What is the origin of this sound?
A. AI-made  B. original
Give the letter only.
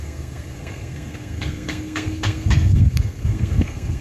A